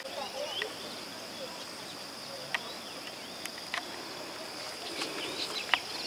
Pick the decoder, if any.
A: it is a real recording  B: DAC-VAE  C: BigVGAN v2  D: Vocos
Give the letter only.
A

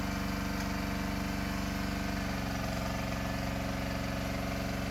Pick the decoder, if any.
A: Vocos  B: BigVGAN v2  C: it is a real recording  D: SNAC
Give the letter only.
C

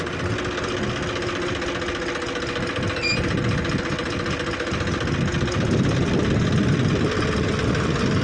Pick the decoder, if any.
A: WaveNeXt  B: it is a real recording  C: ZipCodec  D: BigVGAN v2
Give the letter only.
B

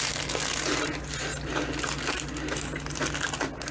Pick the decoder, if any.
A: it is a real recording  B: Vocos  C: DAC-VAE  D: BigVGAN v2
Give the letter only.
A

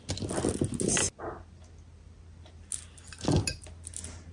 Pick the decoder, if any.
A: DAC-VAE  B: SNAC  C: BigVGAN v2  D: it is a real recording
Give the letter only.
D